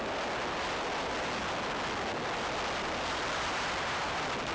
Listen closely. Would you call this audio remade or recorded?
recorded